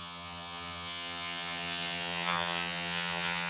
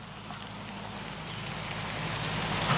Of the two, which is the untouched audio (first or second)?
second